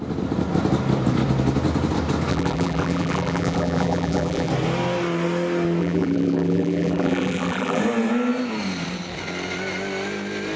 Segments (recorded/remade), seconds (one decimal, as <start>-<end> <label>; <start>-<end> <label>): 0.0-2.3 recorded; 2.3-4.5 remade; 4.5-5.8 recorded; 5.8-7.8 remade; 7.8-10.6 recorded